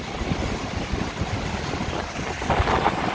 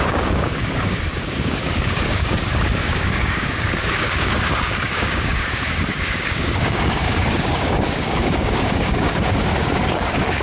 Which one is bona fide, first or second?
first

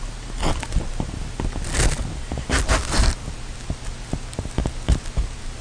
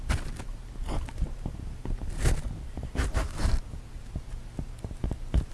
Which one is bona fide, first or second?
first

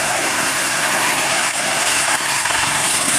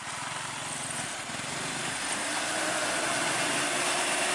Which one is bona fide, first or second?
second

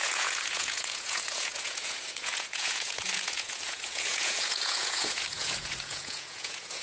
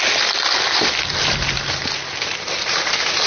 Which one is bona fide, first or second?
second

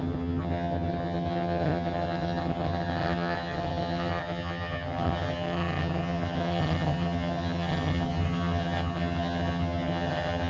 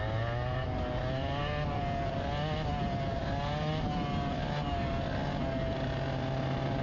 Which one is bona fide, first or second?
second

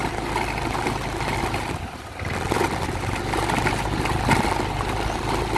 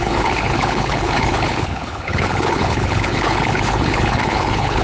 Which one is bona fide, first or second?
first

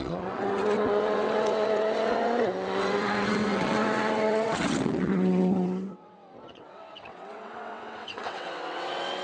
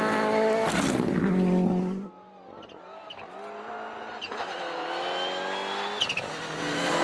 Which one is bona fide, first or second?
second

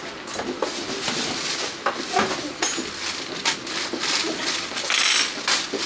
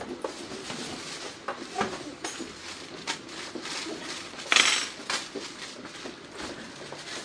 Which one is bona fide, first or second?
first